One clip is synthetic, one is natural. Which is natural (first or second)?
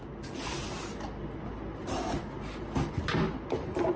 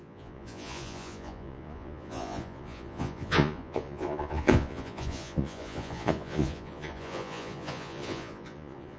first